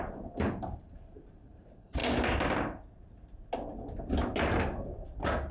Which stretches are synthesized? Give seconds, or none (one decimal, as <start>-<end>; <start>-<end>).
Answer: 0.0-2.0